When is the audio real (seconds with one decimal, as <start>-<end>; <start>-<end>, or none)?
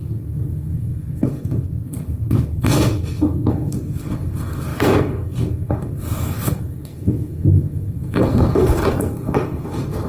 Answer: none